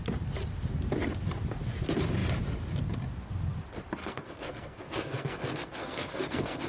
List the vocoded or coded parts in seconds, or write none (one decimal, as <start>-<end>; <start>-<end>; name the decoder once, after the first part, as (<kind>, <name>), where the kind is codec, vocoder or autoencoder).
4.0-6.7 (codec, SNAC)